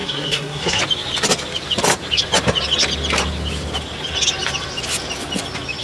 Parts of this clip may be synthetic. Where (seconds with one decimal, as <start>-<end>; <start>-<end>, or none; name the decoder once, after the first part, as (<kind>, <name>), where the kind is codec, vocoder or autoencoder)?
0.0-0.8 (codec, SNAC)